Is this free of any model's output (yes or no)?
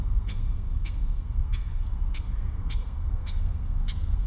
no